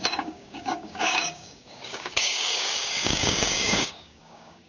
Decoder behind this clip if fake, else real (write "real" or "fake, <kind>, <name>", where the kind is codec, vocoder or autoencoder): fake, codec, DAC